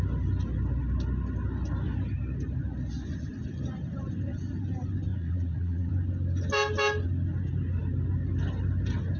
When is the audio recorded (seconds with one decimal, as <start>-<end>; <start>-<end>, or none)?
0.0-5.1; 5.9-9.2